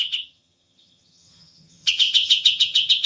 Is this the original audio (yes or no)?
no